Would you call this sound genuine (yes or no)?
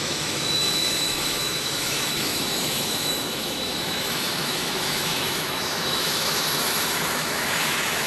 no